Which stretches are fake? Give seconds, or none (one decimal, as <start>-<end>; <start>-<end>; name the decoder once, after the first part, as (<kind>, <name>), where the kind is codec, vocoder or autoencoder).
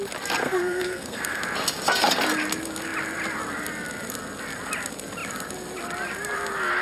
0.4-1.4 (codec, SNAC)